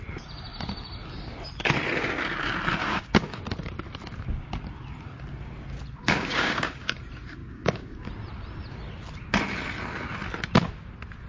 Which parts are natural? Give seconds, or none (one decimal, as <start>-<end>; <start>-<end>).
0.0-2.8; 3.4-6.0; 7.0-7.4; 8.1-11.3